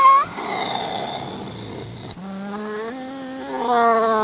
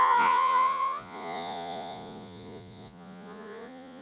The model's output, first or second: second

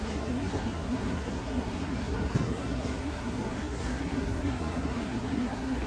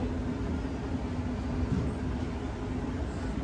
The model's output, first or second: first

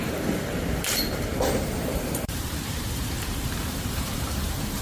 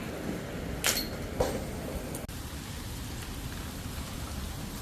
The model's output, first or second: first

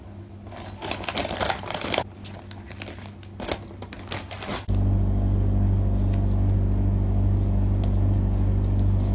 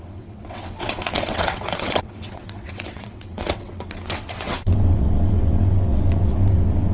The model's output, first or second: second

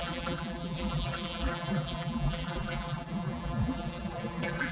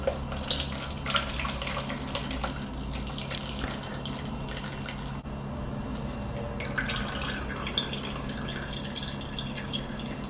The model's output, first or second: first